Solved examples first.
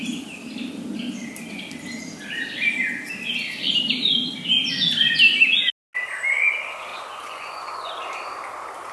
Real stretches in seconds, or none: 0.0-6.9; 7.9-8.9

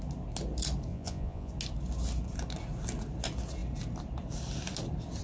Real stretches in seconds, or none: 0.0-0.9; 1.5-5.2

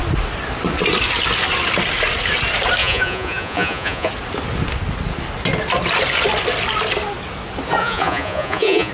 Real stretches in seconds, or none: 0.0-2.8; 4.1-7.8

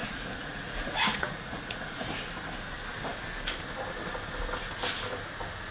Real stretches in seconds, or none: 2.1-5.7

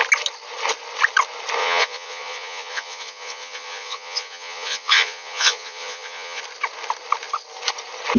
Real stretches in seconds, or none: 0.0-1.6; 6.4-8.2

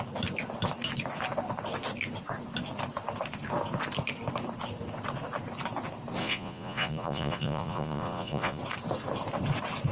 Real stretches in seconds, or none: 0.0-6.2; 8.6-9.9

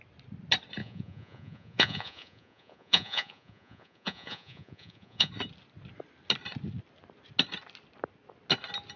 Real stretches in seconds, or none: 0.0-0.8; 5.3-9.0

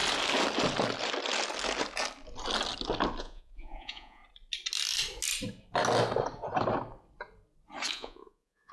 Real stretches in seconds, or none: 0.0-3.2; 4.2-7.9